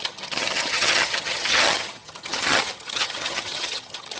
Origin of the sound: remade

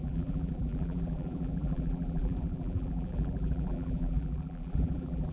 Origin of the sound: remade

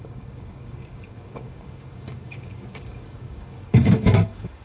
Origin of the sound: remade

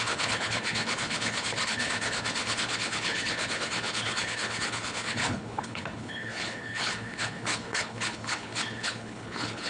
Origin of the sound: remade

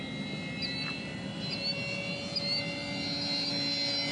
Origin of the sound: recorded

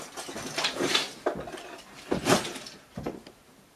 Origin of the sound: recorded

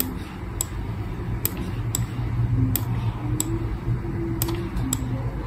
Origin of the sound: recorded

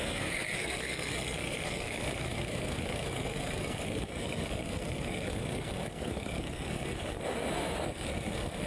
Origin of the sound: remade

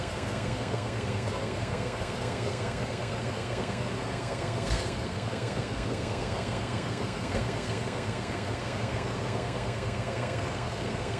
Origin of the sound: remade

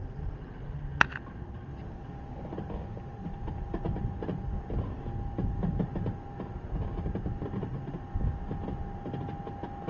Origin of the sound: recorded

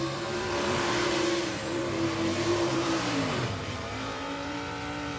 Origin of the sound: remade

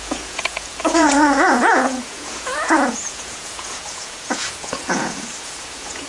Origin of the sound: remade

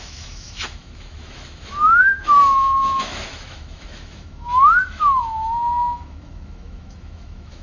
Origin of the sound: remade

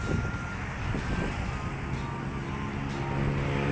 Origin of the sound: recorded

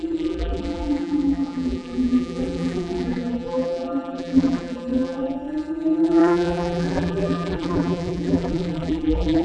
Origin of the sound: remade